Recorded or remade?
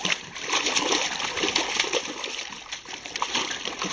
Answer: recorded